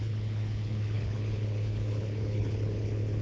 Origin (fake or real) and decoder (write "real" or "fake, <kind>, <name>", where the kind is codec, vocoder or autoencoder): fake, codec, HILCodec